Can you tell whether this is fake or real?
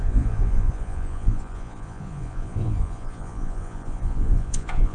fake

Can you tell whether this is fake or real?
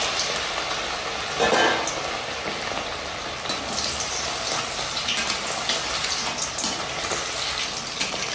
real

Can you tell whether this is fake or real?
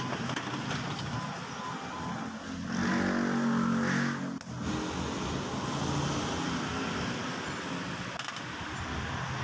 real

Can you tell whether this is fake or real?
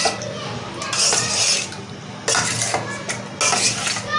real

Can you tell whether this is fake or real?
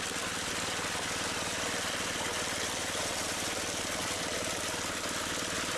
real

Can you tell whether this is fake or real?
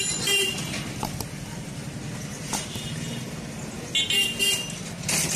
real